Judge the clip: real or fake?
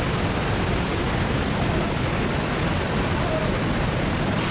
real